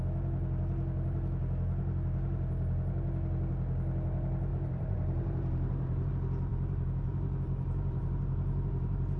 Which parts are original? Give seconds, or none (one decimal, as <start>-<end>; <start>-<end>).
0.0-4.5; 6.1-6.5